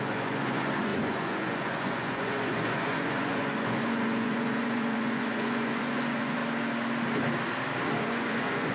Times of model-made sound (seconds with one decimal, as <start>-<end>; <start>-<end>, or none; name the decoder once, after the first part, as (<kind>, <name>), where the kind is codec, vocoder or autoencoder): 0.0-6.4 (vocoder, Vocos); 8.0-8.7